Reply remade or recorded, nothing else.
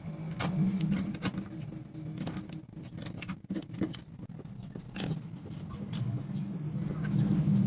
recorded